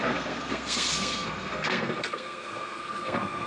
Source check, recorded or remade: remade